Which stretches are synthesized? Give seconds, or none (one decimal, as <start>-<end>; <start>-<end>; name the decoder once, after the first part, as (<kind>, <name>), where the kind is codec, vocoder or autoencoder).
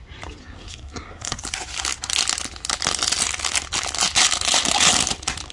0.4-1.4 (codec, SNAC)